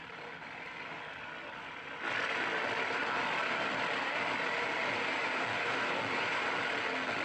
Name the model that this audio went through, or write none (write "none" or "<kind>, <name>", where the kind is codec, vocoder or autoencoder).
none